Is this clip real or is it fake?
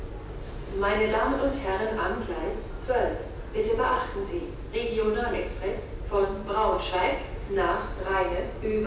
real